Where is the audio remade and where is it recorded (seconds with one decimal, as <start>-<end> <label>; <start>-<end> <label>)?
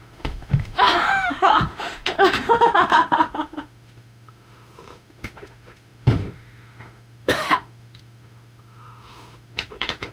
0.0-10.1 remade